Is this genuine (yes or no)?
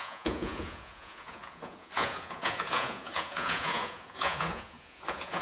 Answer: no